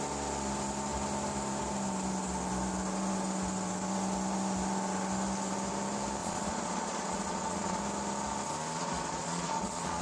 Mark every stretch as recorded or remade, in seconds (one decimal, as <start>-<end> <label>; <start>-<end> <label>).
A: 0.0-6.2 recorded; 6.2-7.8 remade; 7.8-8.8 recorded; 8.8-10.0 remade